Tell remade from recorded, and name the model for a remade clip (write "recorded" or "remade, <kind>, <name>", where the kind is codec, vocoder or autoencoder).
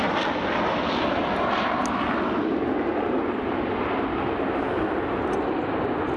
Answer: recorded